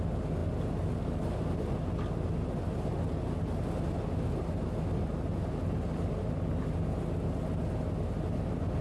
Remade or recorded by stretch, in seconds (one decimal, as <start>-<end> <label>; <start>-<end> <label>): 0.0-8.8 recorded